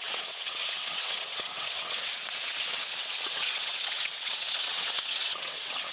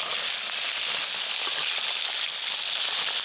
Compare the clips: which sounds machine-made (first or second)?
first